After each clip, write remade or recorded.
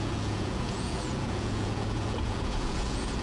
remade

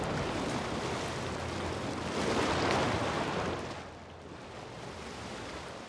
recorded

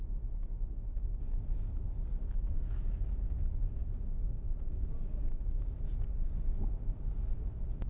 recorded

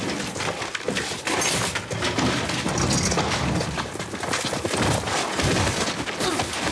recorded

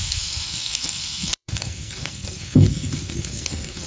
remade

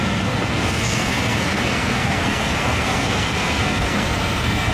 remade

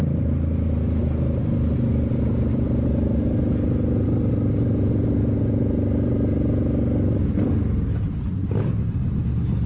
recorded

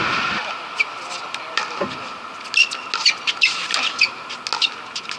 recorded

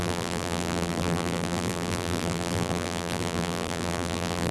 remade